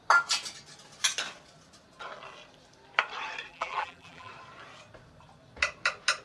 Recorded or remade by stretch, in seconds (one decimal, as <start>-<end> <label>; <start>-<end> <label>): 0.0-3.5 recorded; 3.5-4.3 remade; 4.3-6.2 recorded